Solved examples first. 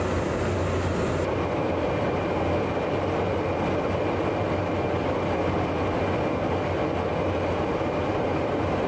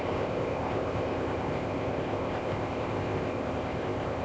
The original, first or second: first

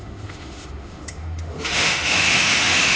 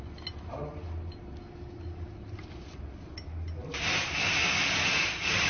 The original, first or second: second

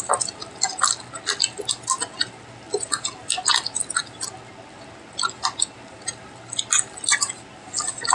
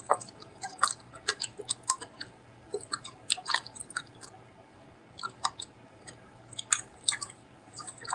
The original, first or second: first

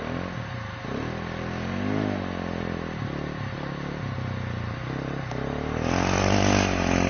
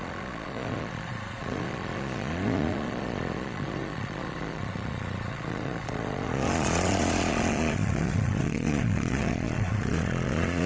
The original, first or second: first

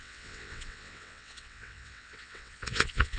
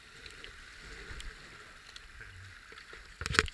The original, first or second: second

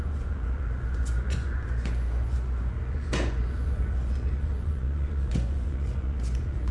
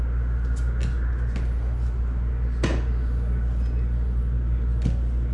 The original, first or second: second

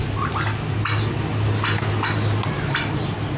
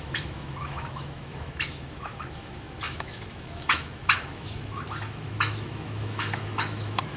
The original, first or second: first